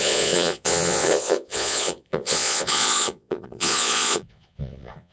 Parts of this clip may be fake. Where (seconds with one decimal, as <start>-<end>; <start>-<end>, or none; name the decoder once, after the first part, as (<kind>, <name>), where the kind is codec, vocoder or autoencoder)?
0.0-5.1 (vocoder, Vocos)